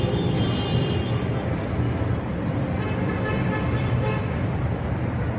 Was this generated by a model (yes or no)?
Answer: yes